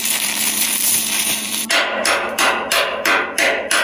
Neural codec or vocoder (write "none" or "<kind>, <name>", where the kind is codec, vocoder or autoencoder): vocoder, BigVGAN v2